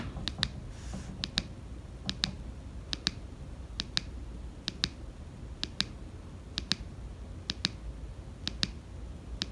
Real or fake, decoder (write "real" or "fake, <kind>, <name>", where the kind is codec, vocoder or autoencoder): real